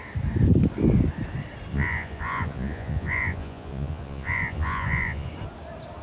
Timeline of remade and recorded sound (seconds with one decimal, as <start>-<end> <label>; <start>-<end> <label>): 0.0-1.7 recorded; 1.7-5.3 remade; 5.3-6.0 recorded